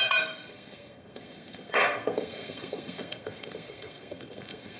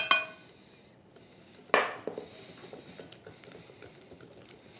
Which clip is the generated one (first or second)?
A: first